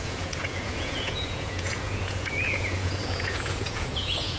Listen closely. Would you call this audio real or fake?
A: fake